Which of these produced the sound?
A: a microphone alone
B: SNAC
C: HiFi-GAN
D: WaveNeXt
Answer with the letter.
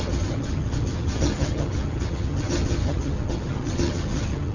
C